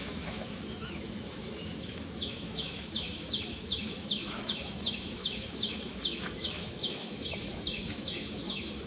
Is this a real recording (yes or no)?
no